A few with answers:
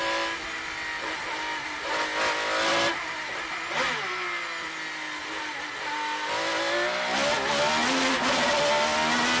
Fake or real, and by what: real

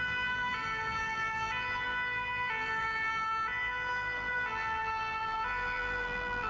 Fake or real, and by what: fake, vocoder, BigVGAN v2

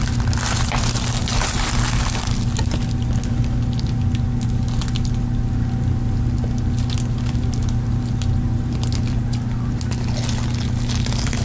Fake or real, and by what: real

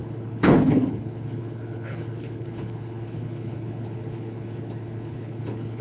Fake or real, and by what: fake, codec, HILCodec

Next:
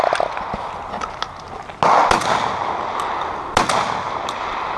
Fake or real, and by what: real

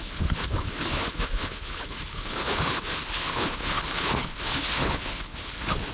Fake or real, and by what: fake, codec, HILCodec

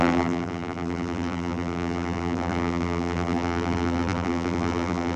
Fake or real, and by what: fake, vocoder, BigVGAN v2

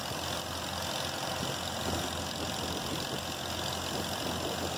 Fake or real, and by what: real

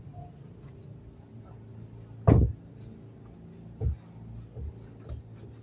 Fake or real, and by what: real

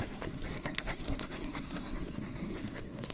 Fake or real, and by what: fake, codec, SNAC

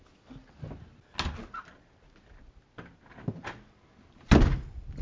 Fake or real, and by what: real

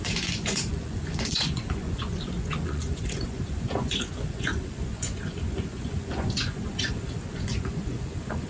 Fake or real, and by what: fake, vocoder, Vocos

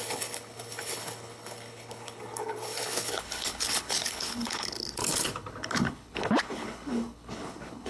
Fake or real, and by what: fake, codec, HILCodec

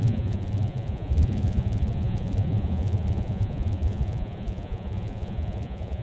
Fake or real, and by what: fake, vocoder, Vocos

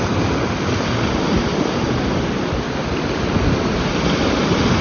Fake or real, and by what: real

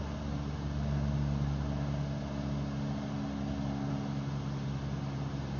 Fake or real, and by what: real